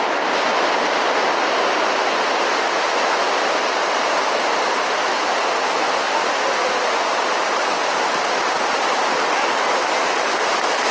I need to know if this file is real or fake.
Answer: real